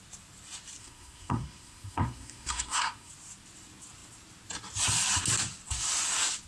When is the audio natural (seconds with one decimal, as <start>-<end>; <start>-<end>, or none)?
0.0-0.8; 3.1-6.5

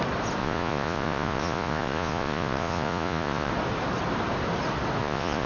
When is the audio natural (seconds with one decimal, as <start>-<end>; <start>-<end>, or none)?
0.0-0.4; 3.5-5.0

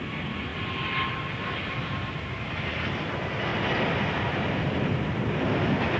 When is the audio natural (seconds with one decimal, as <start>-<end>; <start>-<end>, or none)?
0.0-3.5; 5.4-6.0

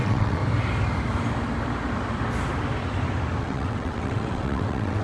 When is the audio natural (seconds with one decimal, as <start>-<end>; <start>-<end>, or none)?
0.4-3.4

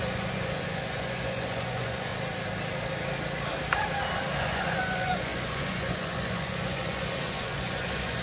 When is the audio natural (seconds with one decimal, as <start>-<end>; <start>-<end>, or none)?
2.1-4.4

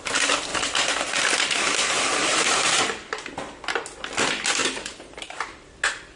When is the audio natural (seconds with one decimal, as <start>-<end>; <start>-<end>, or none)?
0.0-0.5; 1.0-2.3; 3.1-4.6; 5.7-6.2

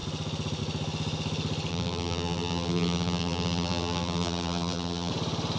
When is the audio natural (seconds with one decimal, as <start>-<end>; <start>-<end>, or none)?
0.0-1.7; 5.1-5.6